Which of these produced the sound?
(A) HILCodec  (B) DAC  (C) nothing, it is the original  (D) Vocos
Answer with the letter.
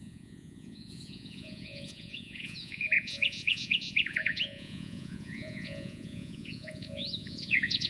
D